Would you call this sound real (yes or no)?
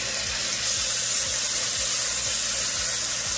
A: yes